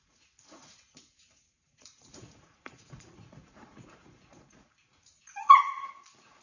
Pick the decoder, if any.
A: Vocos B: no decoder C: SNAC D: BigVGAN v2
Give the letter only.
A